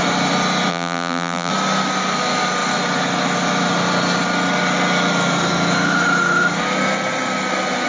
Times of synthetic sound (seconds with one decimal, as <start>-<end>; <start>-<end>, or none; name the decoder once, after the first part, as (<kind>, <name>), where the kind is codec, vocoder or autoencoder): 0.7-1.5 (vocoder, BigVGAN v2)